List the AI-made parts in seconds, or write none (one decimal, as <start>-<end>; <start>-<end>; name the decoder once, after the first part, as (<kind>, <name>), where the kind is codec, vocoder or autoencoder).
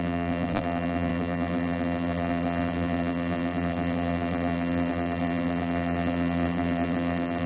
0.0-7.5 (vocoder, BigVGAN v2)